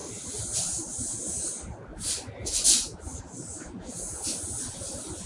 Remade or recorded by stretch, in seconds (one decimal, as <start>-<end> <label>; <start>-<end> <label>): 0.0-5.3 recorded